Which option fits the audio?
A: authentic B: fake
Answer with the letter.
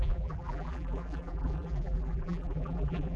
B